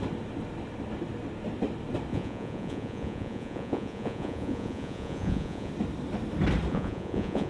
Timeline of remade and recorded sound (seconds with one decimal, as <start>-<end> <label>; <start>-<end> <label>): 0.0-2.1 recorded; 2.1-5.7 remade; 5.7-6.7 recorded; 6.7-7.5 remade